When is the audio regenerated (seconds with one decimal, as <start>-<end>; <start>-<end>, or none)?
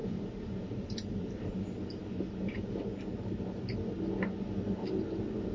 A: 0.0-1.5